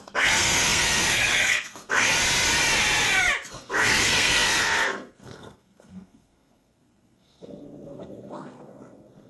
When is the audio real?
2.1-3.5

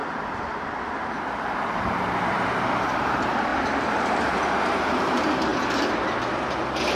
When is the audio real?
0.0-1.7; 5.5-6.3

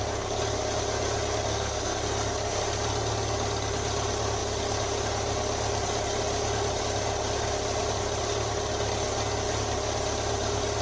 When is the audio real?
0.0-1.5; 2.0-10.8

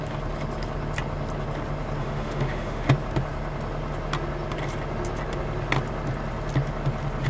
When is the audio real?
0.0-2.0; 2.9-7.3

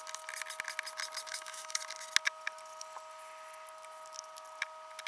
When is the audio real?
0.0-1.3; 1.8-5.1

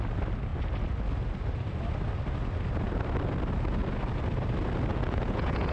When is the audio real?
0.0-4.9

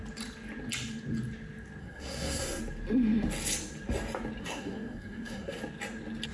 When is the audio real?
0.0-1.8; 2.6-4.4; 5.6-6.3

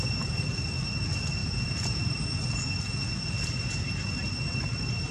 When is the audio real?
0.0-1.4; 2.0-5.1